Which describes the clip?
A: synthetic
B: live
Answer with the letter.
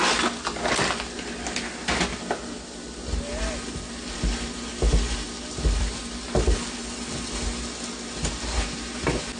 B